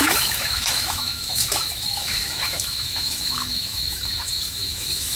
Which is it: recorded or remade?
remade